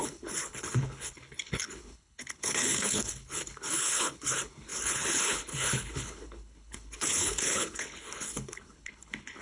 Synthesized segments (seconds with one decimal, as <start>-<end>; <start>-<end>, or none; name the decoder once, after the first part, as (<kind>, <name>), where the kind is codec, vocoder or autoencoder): 0.0-9.4 (codec, HILCodec)